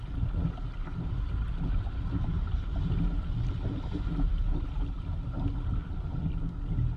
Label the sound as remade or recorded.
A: recorded